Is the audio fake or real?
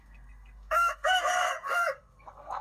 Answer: fake